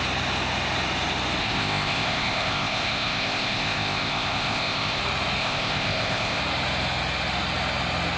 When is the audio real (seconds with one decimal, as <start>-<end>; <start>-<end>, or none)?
0.0-1.4; 5.0-5.4; 6.4-8.2